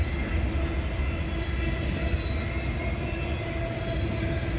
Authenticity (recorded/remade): recorded